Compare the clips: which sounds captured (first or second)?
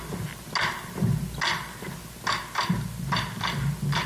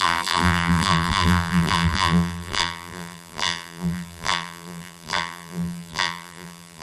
first